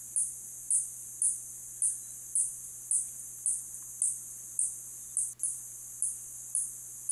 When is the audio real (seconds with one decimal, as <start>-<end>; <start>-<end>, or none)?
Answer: 0.0-7.1